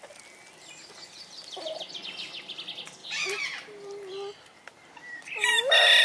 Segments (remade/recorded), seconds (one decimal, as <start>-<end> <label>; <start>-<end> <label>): 0.0-3.0 recorded; 3.0-6.0 remade